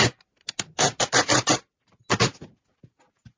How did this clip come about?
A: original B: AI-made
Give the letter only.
A